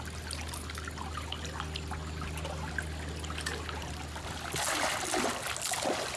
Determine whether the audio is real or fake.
real